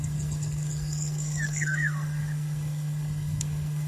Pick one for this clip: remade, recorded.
remade